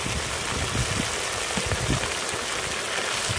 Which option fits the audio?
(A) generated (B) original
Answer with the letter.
B